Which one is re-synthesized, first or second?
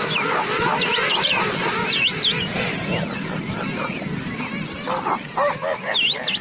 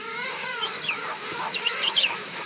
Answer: second